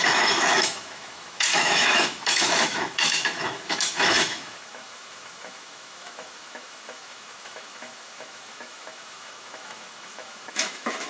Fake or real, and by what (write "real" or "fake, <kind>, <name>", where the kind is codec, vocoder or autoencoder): fake, autoencoder, DAC-VAE